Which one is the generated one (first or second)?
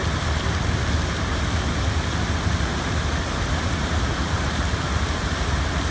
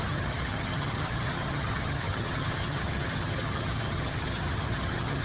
second